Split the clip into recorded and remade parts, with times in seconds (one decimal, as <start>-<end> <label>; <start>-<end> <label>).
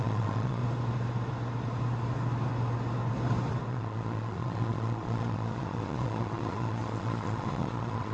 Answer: 0.0-0.6 remade; 0.6-3.7 recorded; 3.7-8.1 remade